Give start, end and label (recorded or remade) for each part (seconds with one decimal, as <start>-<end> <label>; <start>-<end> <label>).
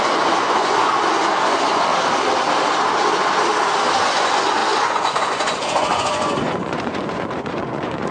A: 0.0-1.9 remade; 1.9-4.0 recorded; 4.0-8.1 remade